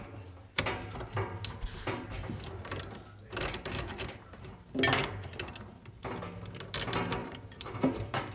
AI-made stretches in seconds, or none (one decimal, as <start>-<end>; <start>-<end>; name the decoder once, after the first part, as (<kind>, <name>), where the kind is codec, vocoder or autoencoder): 7.2-8.3 (vocoder, BigVGAN v2)